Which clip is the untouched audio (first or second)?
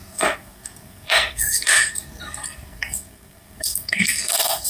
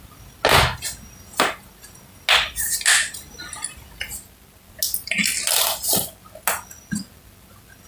second